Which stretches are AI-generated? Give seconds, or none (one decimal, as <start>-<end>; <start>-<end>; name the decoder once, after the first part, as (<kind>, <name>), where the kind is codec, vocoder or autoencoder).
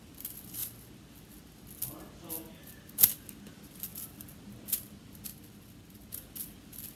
none